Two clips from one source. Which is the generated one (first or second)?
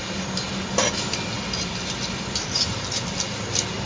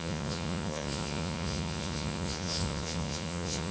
second